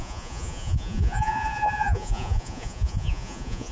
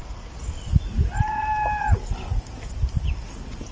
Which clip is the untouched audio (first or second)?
second